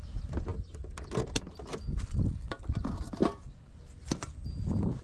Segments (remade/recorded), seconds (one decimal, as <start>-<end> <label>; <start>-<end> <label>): 0.0-5.0 recorded